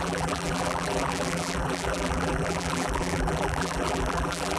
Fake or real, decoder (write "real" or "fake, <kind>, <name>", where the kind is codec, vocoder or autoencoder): fake, vocoder, BigVGAN v2